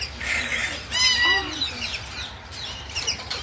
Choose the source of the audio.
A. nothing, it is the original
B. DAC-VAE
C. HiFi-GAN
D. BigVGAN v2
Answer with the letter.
D